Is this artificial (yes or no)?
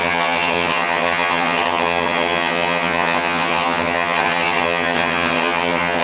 yes